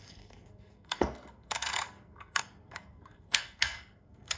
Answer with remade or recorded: remade